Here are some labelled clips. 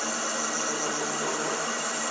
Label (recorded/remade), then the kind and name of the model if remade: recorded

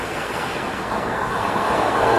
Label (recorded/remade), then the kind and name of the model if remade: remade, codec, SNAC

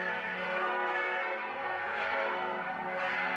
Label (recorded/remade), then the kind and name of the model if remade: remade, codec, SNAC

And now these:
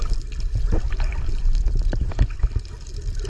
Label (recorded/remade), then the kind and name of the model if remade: recorded